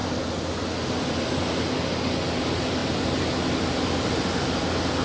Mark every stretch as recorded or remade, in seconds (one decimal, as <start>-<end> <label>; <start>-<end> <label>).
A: 0.0-5.0 recorded

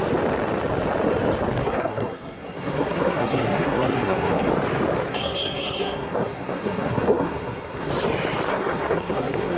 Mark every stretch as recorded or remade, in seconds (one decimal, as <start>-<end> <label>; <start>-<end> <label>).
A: 0.0-1.6 recorded; 1.6-4.5 remade; 4.5-5.1 recorded; 5.1-7.9 remade; 7.9-8.5 recorded; 8.5-9.6 remade

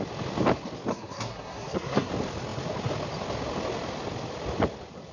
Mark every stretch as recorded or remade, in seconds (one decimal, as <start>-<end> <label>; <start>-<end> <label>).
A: 0.0-0.9 recorded; 0.9-2.1 remade; 2.1-5.1 recorded

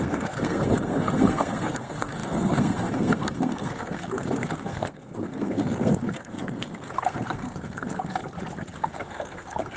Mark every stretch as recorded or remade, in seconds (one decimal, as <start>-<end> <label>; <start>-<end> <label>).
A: 0.0-8.2 remade; 8.2-8.8 recorded; 8.8-9.8 remade

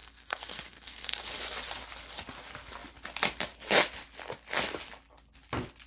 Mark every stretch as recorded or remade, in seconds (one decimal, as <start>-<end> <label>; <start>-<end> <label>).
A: 0.0-1.2 remade; 1.2-5.9 recorded

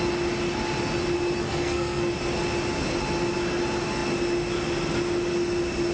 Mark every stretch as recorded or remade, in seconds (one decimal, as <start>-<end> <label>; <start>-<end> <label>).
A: 0.0-1.4 recorded; 1.4-2.1 remade; 2.1-5.9 recorded